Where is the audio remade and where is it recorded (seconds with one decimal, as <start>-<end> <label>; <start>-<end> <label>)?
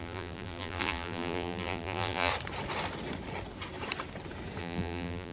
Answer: 0.0-2.3 remade; 2.3-4.6 recorded; 4.6-5.3 remade